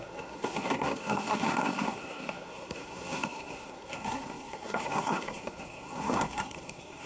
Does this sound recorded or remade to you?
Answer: remade